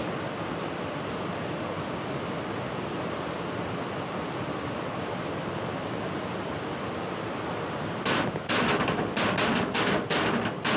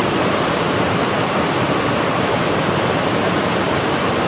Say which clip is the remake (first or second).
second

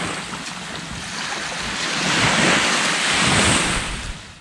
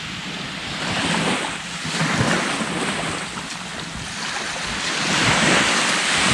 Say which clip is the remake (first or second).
second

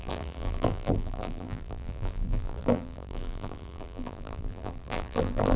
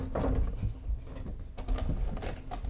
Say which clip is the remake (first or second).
first